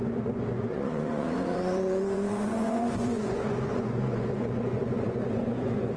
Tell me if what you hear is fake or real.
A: fake